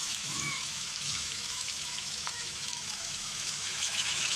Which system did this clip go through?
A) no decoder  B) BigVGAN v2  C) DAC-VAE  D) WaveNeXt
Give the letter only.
C